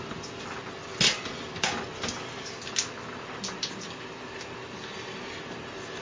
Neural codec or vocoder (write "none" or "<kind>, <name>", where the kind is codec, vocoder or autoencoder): none